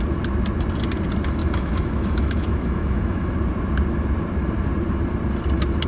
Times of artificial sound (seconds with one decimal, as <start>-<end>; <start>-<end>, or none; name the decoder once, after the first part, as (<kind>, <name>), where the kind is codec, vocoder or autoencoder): 1.4-3.3 (autoencoder, DAC-VAE)